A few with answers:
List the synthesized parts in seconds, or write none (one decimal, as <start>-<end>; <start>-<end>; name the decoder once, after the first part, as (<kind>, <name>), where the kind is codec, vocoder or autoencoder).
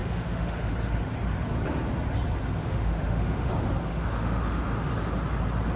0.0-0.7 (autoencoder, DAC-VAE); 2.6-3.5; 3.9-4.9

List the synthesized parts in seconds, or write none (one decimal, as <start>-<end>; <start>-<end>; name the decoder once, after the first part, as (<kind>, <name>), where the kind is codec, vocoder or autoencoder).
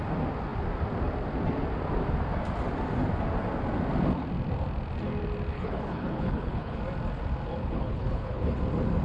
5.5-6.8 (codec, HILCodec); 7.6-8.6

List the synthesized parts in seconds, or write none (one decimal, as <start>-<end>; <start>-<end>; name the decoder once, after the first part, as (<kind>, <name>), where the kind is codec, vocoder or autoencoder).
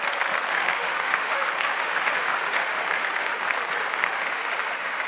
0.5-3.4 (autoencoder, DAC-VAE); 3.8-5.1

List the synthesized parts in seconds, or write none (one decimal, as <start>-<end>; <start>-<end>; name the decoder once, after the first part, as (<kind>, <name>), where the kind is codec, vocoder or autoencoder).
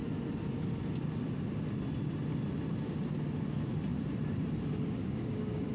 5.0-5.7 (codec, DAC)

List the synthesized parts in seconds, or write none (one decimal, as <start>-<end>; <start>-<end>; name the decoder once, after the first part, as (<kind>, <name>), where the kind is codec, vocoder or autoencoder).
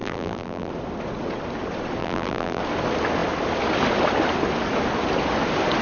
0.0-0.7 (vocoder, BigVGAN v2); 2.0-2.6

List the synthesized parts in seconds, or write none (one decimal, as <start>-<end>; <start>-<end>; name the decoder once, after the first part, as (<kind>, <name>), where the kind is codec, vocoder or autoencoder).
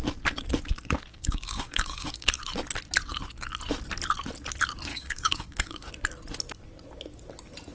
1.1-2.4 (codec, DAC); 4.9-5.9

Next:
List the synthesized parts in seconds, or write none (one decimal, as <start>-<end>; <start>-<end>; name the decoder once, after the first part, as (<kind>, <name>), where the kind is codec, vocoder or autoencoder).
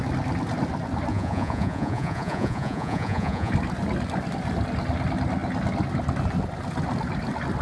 1.1-3.5 (vocoder, Vocos)